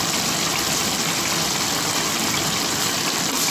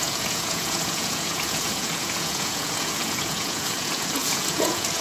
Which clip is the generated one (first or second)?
second